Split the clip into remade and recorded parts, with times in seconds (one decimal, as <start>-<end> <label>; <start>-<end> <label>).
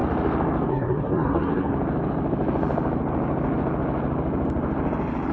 0.0-0.7 recorded; 0.7-1.7 remade; 1.7-5.3 recorded